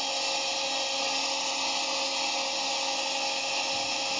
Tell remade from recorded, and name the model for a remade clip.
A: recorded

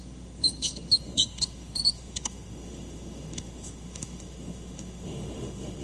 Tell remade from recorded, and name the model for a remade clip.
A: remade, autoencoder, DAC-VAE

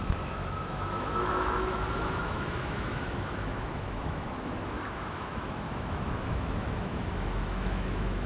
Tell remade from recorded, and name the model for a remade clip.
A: remade, autoencoder, DAC-VAE